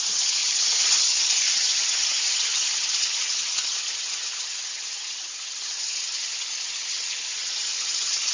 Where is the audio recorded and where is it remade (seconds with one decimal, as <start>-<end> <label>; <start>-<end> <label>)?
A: 0.0-8.3 remade